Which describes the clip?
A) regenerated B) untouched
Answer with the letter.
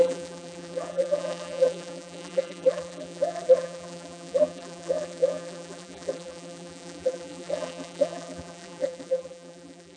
A